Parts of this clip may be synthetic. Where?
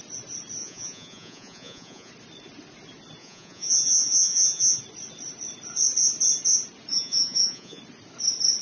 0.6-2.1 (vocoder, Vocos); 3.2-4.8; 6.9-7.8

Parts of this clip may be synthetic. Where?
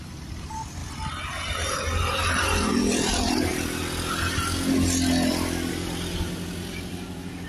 0.0-0.8 (vocoder, BigVGAN v2); 1.4-3.5; 5.7-7.5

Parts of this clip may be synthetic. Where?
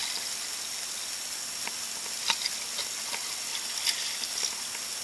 none